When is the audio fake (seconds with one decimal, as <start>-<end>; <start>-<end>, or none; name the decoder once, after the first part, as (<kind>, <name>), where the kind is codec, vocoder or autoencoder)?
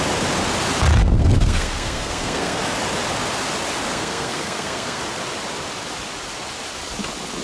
1.0-2.6 (codec, SNAC); 3.9-5.0